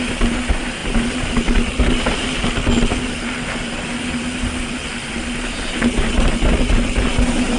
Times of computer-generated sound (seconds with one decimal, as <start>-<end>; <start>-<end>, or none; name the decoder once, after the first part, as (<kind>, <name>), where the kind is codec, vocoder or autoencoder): none